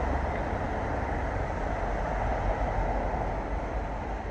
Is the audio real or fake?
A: real